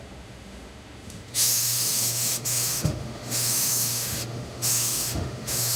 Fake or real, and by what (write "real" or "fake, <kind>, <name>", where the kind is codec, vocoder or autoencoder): fake, autoencoder, DAC-VAE